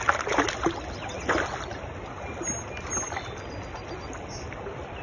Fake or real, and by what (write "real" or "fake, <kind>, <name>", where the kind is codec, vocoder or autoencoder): real